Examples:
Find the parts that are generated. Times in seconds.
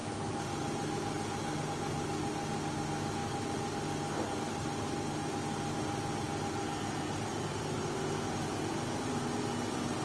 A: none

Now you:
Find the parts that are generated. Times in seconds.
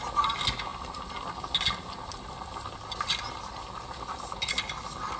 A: none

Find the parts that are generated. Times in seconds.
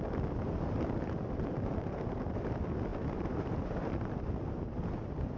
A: 1.0-2.2 (vocoder, BigVGAN v2); 2.9-4.2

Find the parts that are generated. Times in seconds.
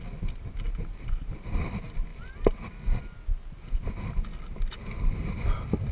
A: none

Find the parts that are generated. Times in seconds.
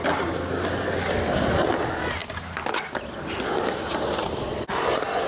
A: none